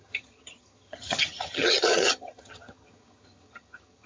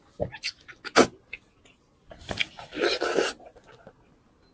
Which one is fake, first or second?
first